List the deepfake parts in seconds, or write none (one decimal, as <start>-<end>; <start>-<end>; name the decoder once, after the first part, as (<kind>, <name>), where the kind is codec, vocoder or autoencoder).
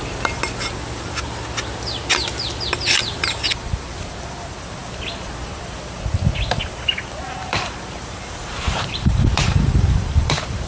3.6-4.3 (vocoder, BigVGAN v2); 7.4-10.7